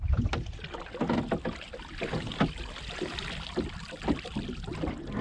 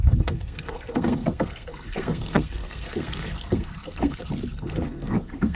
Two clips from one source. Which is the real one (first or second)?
first